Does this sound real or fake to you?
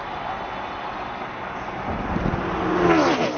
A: real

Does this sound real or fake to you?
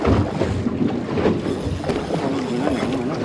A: real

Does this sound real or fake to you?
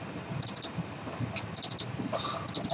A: real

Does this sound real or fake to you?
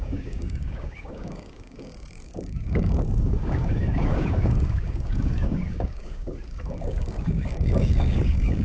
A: fake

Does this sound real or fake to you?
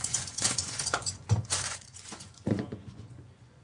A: fake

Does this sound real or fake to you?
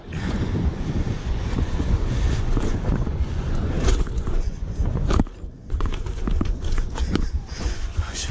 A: fake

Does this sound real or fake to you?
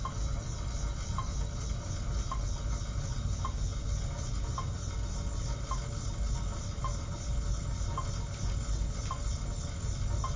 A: real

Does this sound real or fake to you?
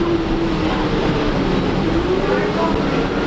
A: real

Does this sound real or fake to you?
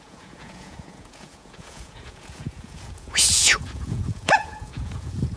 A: fake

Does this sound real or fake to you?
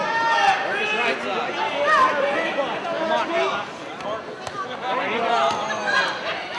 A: real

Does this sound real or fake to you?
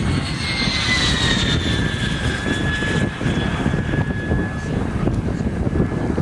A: real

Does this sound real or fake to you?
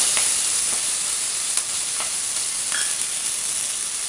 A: real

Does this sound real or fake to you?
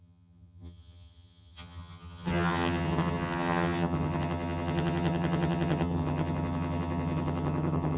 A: fake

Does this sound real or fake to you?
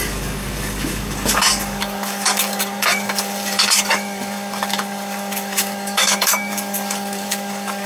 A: fake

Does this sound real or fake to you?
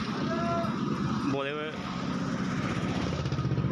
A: real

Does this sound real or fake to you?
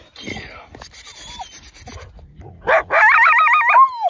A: real